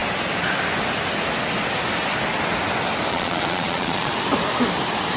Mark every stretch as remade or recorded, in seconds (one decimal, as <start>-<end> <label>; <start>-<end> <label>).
0.0-3.1 recorded; 3.1-4.1 remade; 4.1-5.2 recorded